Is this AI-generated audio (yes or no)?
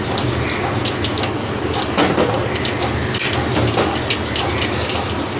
no